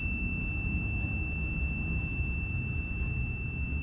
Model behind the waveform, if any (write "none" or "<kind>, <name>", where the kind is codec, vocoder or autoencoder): none